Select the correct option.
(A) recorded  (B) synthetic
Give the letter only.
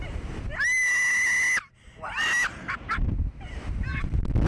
A